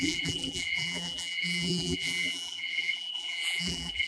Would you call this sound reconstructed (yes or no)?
yes